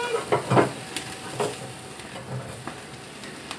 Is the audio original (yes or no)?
yes